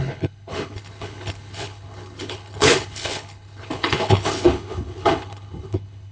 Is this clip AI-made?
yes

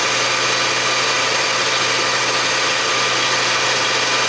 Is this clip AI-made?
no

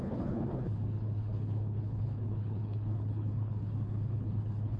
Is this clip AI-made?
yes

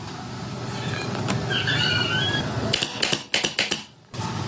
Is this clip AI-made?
no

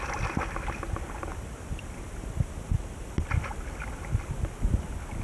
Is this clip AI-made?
no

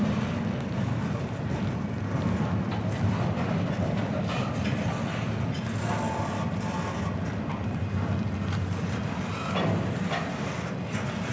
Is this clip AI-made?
no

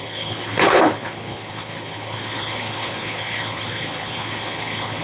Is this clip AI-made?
yes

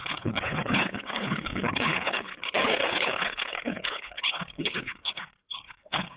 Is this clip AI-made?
yes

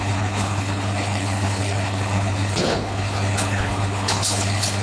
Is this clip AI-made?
yes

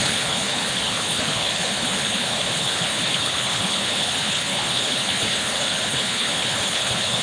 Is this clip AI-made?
yes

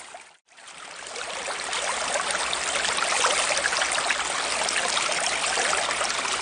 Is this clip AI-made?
no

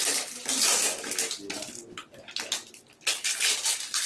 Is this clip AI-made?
no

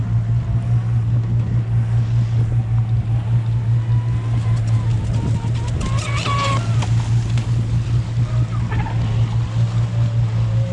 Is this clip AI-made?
no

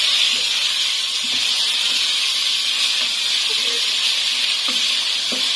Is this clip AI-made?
no